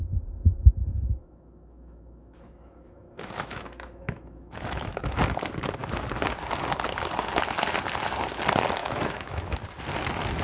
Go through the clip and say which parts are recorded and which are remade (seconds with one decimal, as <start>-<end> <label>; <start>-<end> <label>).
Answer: 0.0-1.2 recorded; 1.2-5.0 remade; 5.0-8.8 recorded; 8.8-9.6 remade; 9.6-10.4 recorded